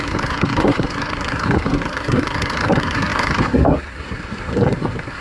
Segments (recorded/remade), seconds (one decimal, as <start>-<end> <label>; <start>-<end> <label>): 0.0-5.2 remade